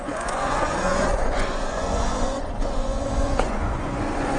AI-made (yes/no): yes